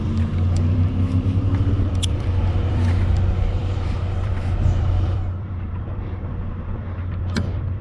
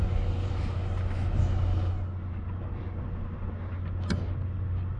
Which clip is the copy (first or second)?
first